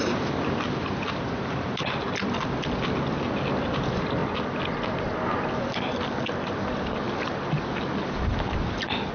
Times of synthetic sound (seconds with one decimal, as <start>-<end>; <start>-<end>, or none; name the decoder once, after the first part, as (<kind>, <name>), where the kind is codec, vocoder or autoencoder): none